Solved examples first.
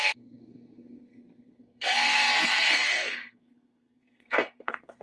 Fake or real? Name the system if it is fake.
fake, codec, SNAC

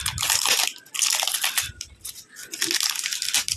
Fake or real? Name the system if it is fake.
real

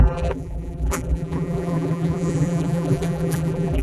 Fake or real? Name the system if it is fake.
fake, vocoder, BigVGAN v2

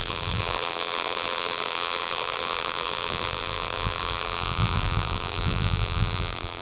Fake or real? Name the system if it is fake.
fake, vocoder, BigVGAN v2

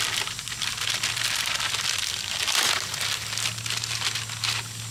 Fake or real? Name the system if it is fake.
real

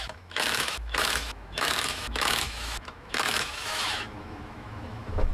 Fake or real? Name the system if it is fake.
fake, autoencoder, DAC-VAE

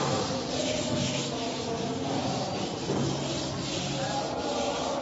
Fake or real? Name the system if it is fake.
real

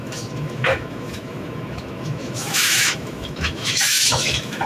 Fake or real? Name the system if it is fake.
fake, autoencoder, DAC-VAE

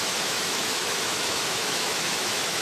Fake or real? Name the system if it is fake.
fake, autoencoder, DAC-VAE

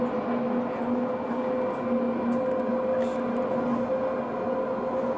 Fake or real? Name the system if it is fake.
real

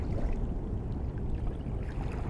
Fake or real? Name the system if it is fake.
real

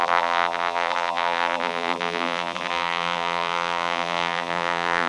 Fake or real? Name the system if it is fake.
fake, vocoder, BigVGAN v2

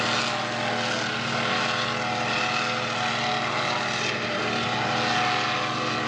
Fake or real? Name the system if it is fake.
real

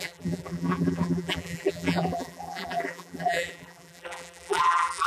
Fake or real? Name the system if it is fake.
fake, vocoder, BigVGAN v2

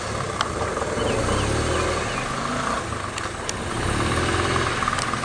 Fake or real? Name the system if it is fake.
real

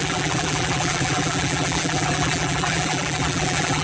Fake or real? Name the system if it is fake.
fake, vocoder, BigVGAN v2